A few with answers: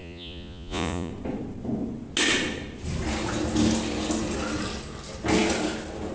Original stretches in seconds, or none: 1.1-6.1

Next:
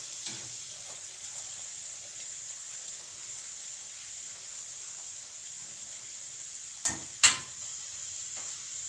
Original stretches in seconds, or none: 0.0-0.8; 1.4-8.9

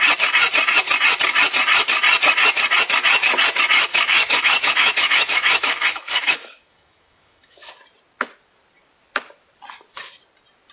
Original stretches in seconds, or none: 0.0-3.9; 7.7-10.7

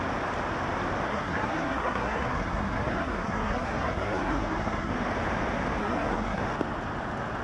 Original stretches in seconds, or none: 0.0-1.1; 4.9-5.8; 6.4-7.4

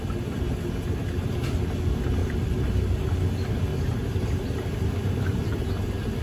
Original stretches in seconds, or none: 0.0-2.2; 3.1-3.7

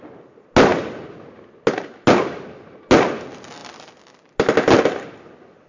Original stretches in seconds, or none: 0.0-5.7